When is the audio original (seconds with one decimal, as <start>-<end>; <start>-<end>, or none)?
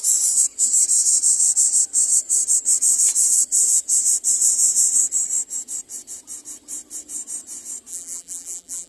0.0-7.9